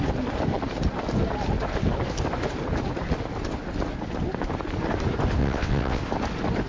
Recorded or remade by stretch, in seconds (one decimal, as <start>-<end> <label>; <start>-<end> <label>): 0.0-5.4 recorded; 5.4-6.0 remade; 6.0-6.7 recorded